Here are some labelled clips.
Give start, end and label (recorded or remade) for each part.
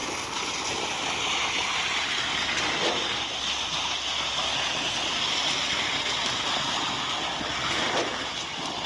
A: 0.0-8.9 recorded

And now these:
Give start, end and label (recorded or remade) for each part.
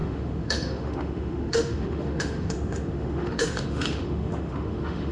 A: 0.0-5.1 remade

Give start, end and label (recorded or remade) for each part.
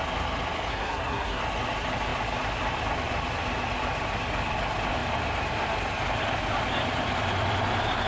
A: 0.0-0.7 recorded; 0.7-1.4 remade; 1.4-8.1 recorded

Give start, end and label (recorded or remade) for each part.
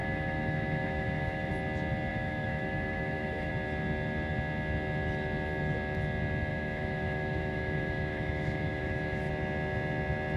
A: 0.0-1.5 remade; 1.5-2.1 recorded; 2.1-3.5 remade; 3.5-6.5 recorded; 6.5-9.3 remade; 9.3-10.4 recorded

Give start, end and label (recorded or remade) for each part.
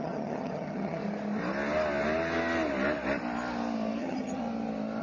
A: 0.0-1.0 remade; 1.0-4.0 recorded; 4.0-4.4 remade; 4.4-5.0 recorded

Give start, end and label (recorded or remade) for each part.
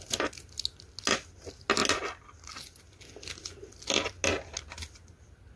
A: 0.0-5.6 recorded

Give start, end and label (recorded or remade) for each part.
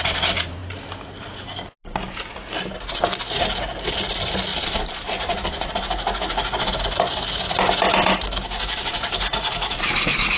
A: 0.0-4.5 recorded; 4.5-5.7 remade; 5.7-10.4 recorded